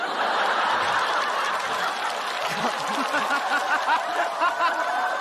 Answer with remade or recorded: recorded